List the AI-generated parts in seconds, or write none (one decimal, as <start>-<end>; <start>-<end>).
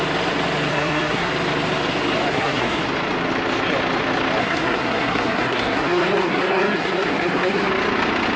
0.7-1.3; 2.3-2.8; 4.4-7.7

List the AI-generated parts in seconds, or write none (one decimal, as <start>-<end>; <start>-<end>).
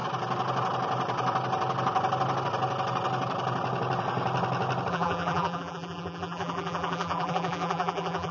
4.9-8.3